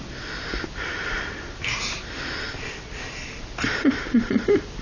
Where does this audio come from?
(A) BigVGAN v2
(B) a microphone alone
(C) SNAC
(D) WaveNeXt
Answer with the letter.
B